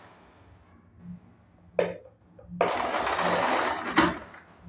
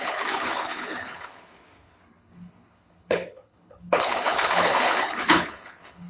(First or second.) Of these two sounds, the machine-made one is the second